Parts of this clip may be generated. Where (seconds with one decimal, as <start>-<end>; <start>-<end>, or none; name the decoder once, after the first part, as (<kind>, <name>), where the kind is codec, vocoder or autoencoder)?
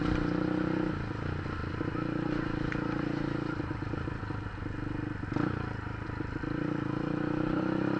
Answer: none